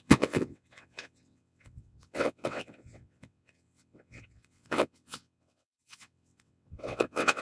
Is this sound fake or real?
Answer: fake